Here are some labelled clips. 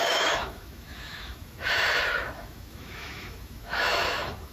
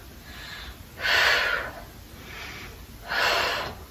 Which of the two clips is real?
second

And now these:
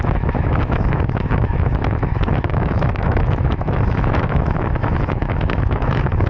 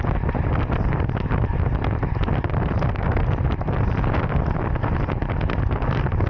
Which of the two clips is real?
second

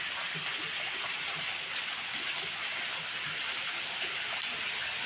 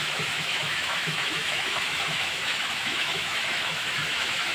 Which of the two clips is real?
first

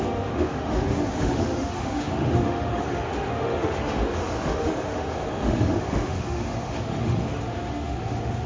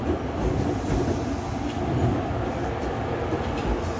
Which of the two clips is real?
second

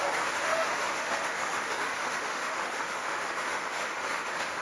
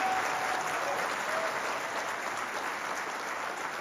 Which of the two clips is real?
second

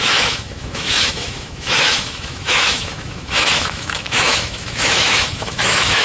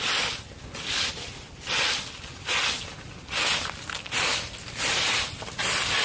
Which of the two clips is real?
second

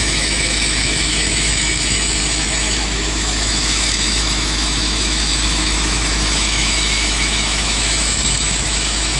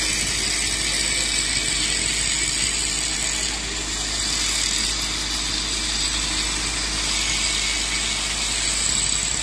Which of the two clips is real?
second